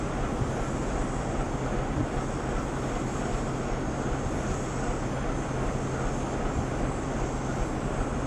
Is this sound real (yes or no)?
yes